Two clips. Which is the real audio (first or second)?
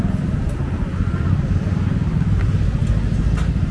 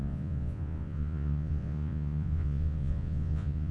first